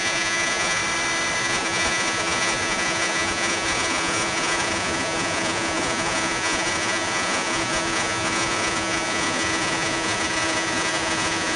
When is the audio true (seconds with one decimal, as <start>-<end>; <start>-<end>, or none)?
0.8-1.4